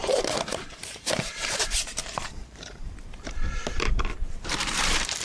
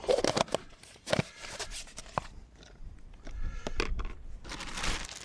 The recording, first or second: second